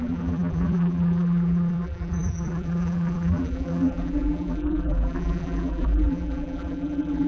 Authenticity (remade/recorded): remade